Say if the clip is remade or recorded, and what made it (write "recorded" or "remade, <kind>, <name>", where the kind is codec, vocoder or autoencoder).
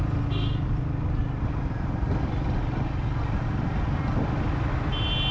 recorded